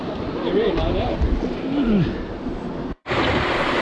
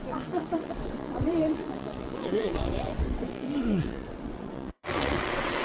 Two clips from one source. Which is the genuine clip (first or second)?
first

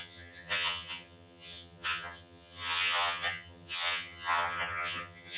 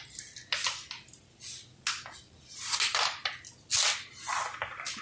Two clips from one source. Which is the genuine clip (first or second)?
second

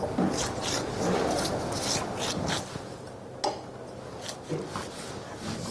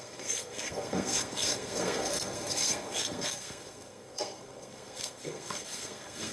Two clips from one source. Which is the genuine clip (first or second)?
first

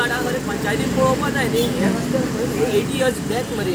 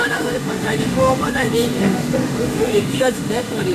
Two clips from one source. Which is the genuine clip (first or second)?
first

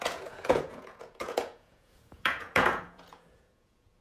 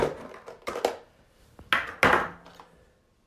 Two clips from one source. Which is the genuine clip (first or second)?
second